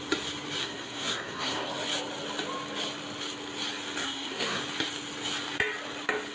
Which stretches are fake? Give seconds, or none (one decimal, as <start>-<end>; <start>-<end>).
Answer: 0.6-1.7; 4.0-4.6